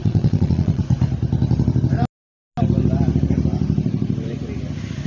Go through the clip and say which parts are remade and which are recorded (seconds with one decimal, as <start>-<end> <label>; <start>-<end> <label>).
0.0-0.8 remade; 0.8-5.1 recorded